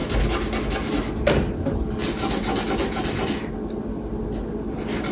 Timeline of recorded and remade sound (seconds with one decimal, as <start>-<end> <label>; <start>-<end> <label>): 0.0-5.1 recorded